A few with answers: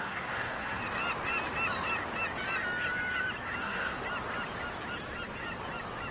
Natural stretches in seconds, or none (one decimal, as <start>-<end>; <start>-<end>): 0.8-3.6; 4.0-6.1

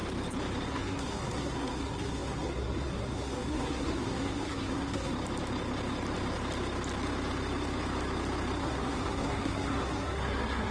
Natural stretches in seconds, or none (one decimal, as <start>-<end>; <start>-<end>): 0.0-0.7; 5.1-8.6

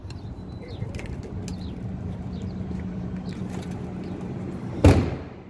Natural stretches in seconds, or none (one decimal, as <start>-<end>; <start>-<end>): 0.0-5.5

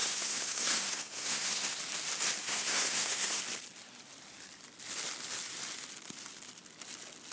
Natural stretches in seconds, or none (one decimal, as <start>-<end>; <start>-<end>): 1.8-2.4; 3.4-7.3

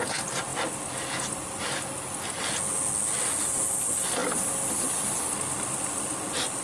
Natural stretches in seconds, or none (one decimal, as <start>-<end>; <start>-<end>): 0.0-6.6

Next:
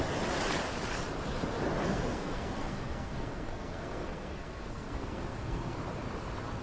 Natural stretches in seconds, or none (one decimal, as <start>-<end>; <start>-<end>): 0.0-1.8; 5.8-6.6

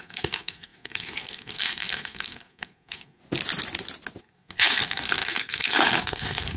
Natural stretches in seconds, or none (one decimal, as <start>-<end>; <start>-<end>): 3.2-4.2